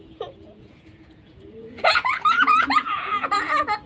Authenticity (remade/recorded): remade